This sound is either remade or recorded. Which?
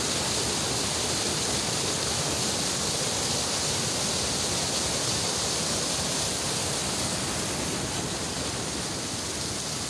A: recorded